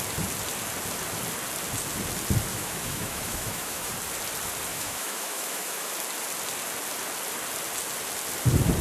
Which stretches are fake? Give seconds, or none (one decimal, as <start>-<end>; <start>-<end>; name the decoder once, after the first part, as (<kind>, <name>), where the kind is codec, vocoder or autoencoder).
2.5-3.9 (autoencoder, DAC-VAE); 4.7-5.9

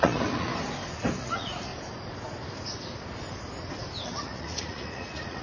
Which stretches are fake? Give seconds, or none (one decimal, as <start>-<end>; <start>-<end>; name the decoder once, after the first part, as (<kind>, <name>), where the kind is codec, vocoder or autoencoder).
0.0-0.5 (vocoder, Vocos); 1.2-1.7; 4.0-5.4

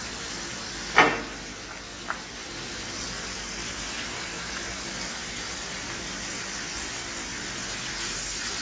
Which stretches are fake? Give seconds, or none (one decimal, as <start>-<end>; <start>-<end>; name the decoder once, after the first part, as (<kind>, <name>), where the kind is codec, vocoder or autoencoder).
none

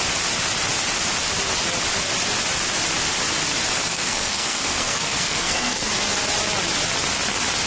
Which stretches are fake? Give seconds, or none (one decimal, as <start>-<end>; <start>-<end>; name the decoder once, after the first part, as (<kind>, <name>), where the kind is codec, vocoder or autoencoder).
3.9-5.9 (codec, SNAC)

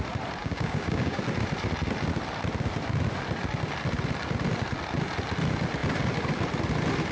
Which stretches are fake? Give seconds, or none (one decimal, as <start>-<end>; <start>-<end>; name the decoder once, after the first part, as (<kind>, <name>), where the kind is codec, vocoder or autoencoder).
0.4-1.2 (codec, DAC)

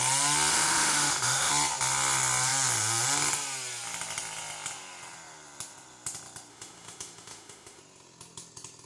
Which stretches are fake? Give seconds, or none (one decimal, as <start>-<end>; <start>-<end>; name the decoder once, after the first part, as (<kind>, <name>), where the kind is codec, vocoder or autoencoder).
0.5-1.5 (autoencoder, DAC-VAE); 6.5-7.8

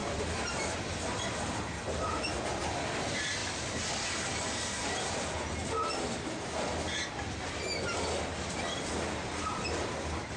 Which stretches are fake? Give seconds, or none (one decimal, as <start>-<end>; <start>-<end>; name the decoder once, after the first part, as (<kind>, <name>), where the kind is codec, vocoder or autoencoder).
none